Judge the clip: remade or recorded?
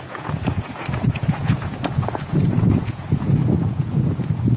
remade